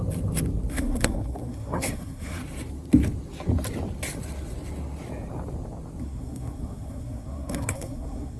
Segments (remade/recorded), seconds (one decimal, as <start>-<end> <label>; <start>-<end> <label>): 0.0-0.7 recorded; 0.7-2.4 remade; 2.4-6.0 recorded; 6.0-8.4 remade

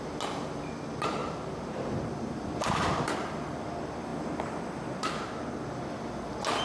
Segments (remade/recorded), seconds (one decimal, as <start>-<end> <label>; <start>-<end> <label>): 0.0-1.2 recorded; 1.2-3.6 remade; 3.6-6.6 recorded

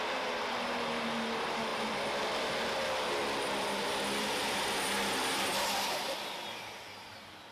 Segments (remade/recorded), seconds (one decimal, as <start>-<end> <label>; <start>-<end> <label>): 0.0-7.5 recorded

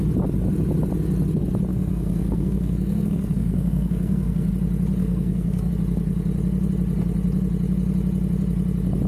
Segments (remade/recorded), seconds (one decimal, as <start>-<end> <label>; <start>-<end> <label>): 0.0-1.7 recorded; 1.7-4.5 remade; 4.5-5.0 recorded; 5.0-5.7 remade; 5.7-9.1 recorded

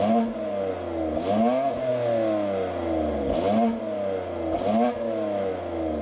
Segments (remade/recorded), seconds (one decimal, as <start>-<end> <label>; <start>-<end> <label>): 0.0-6.0 recorded

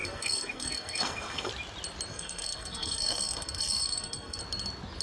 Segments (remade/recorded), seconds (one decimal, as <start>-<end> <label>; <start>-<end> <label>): 0.0-1.5 remade; 1.5-2.1 recorded; 2.1-4.4 remade; 4.4-5.0 recorded

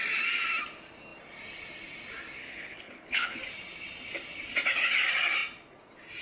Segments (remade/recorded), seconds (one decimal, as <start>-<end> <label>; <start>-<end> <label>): 0.0-2.4 recorded; 2.4-3.4 remade; 3.4-6.2 recorded

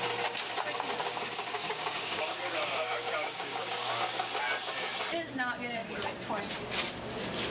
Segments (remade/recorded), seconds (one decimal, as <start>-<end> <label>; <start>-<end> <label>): 0.0-1.0 recorded; 1.0-4.3 remade; 4.3-5.8 recorded; 5.8-6.4 remade; 6.4-7.5 recorded